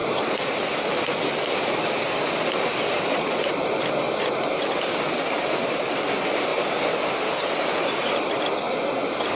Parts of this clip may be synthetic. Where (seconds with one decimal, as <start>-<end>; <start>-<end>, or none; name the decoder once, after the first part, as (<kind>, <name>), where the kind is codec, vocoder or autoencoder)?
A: none